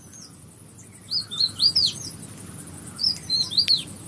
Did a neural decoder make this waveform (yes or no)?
no